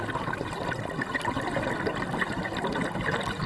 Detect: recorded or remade recorded